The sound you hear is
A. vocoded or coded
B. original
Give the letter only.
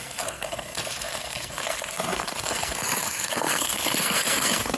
A